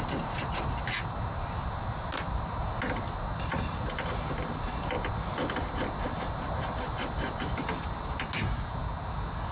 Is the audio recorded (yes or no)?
yes